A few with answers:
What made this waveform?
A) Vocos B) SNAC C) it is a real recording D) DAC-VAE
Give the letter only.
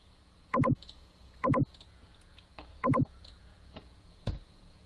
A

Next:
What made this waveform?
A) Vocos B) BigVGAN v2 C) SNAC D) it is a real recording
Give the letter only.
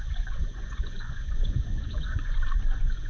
A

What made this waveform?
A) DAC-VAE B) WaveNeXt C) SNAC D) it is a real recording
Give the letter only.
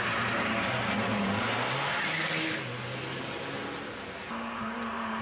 D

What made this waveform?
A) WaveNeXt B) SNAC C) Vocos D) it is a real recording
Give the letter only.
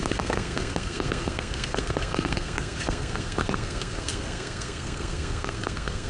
B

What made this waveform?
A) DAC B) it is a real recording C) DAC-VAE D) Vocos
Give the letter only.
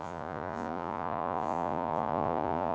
D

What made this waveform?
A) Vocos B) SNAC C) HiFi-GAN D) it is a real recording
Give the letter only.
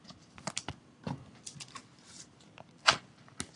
D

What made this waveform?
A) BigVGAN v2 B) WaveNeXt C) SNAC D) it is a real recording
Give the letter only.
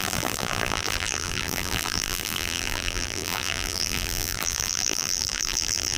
A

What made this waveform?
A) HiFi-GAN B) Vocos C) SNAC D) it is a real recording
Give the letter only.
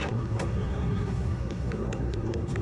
C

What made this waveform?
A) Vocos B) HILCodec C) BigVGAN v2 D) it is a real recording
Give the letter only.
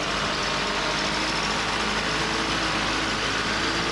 D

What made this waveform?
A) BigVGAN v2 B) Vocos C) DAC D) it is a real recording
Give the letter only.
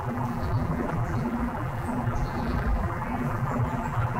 A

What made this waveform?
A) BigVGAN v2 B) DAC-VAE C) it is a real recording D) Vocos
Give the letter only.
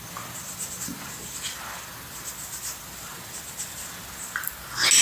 C